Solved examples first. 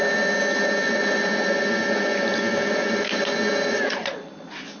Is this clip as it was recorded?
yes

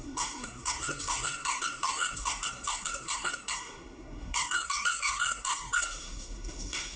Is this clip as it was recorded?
no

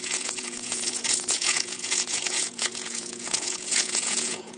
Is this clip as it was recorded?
no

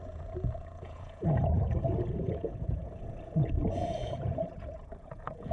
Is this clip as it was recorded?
no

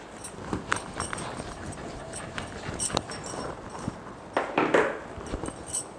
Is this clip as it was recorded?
no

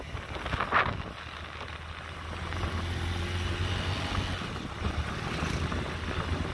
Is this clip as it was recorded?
yes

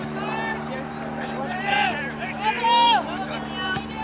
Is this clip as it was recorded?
no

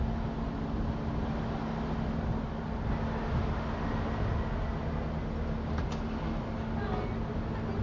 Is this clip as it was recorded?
yes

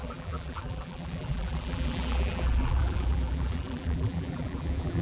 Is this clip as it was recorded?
no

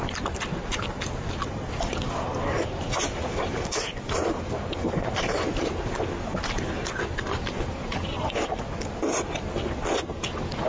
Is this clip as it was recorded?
yes